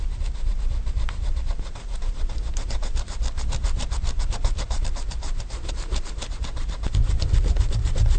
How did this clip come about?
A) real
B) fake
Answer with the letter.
B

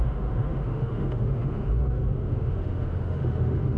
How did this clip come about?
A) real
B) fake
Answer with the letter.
B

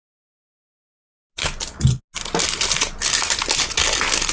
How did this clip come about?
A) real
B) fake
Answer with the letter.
A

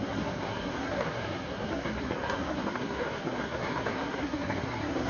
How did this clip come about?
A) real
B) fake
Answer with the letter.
B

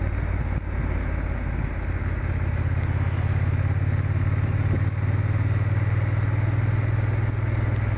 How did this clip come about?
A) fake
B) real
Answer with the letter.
B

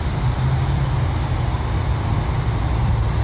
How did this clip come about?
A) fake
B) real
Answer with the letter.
B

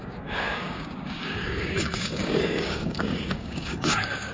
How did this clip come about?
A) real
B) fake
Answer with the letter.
B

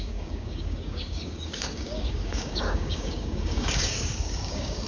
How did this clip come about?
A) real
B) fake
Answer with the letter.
B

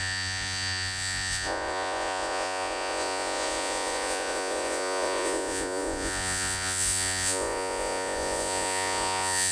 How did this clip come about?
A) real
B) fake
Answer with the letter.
B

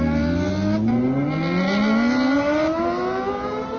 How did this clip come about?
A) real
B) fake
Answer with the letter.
A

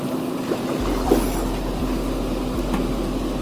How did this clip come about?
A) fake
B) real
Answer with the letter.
B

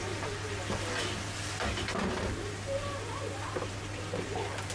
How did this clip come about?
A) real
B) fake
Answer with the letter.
A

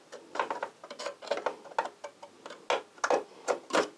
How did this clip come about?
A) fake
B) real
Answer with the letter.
B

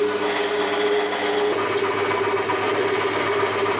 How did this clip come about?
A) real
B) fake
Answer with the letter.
A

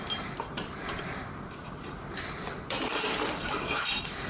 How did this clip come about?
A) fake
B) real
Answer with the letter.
A